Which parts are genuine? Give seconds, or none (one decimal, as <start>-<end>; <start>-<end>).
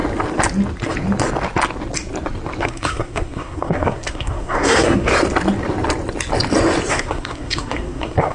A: 0.0-2.6; 5.1-6.9